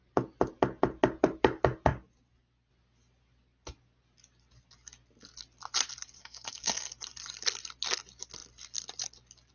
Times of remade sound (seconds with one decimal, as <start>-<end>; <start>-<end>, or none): 6.2-6.9